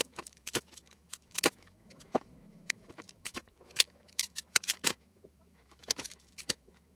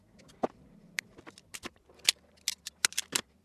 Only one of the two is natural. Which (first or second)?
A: second